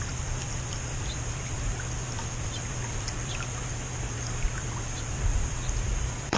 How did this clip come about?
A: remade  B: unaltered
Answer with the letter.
A